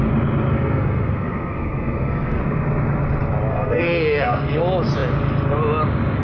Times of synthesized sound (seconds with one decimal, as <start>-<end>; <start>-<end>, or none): 0.5-2.4; 3.5-4.6

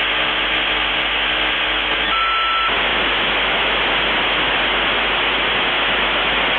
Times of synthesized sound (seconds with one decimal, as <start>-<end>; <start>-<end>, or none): none

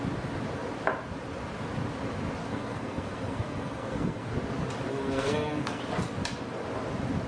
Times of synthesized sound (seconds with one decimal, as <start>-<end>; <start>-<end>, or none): 2.5-4.3; 4.9-5.8

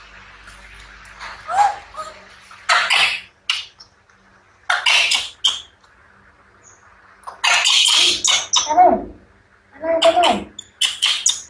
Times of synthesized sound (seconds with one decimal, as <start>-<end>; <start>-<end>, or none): none

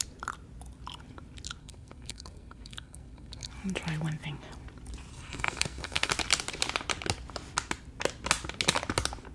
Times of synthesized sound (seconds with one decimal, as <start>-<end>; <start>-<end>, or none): 1.6-3.5; 5.1-6.1

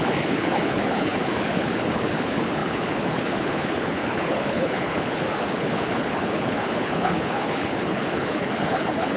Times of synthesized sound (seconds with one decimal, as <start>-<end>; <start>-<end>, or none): 0.0-9.2

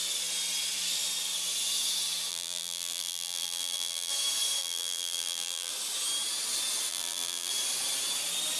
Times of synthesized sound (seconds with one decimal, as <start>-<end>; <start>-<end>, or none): 2.3-4.1; 4.6-5.7; 6.9-7.5

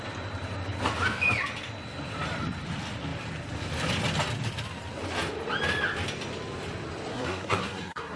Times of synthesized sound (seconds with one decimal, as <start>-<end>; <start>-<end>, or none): 7.1-8.2